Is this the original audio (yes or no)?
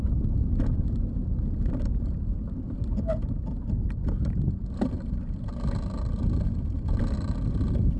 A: yes